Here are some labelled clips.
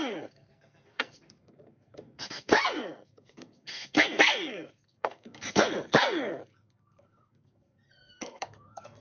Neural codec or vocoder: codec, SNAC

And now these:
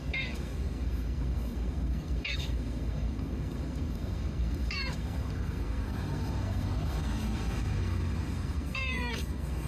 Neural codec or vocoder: codec, SNAC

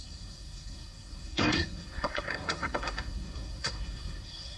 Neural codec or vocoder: codec, SNAC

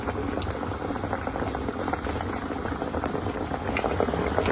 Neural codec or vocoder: none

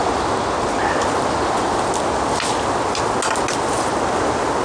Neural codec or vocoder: none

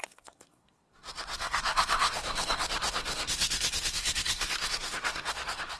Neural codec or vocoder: codec, SNAC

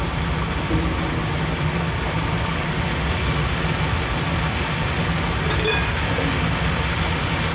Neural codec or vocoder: none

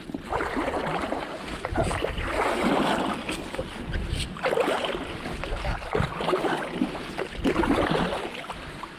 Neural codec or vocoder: none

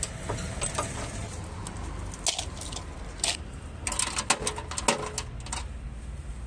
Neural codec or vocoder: none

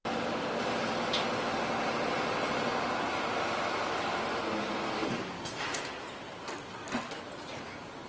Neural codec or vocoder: none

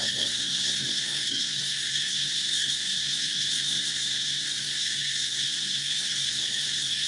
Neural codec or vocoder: codec, SNAC